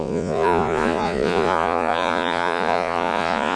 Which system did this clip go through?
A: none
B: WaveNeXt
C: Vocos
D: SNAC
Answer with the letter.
C